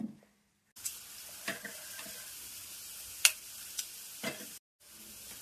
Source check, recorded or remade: recorded